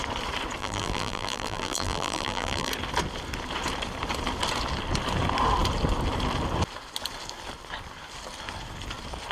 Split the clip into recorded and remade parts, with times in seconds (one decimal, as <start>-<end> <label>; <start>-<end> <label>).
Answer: 0.0-0.6 recorded; 0.6-2.7 remade; 2.7-9.3 recorded